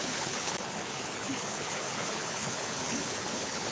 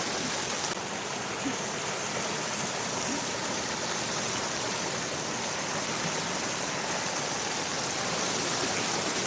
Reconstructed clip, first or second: first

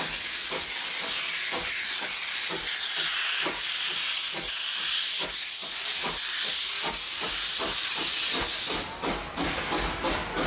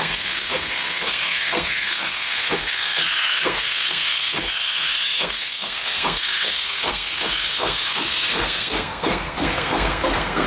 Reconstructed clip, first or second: second